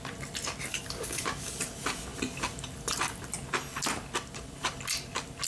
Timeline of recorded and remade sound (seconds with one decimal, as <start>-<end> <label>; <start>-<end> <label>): 0.0-0.7 recorded; 0.7-1.6 remade; 1.6-5.5 recorded